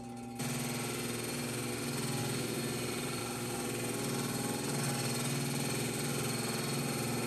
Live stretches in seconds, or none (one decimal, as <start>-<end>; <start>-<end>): 0.0-2.2; 3.2-7.3